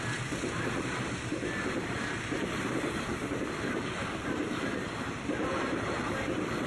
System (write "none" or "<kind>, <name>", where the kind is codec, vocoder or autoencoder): vocoder, BigVGAN v2